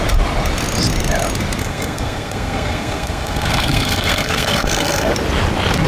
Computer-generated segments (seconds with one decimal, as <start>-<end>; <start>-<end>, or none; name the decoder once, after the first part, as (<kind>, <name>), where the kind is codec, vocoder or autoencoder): 1.6-5.1 (codec, SNAC)